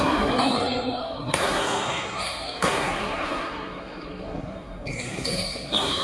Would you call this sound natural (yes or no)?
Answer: no